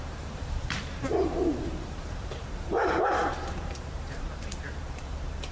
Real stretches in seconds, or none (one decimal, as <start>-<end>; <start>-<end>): none